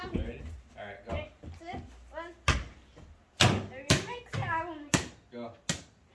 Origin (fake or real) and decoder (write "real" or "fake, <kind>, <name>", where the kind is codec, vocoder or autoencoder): real